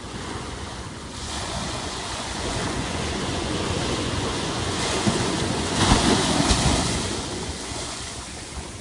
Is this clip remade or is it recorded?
remade